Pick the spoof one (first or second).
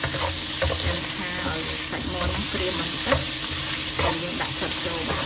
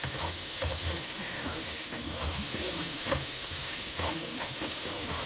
second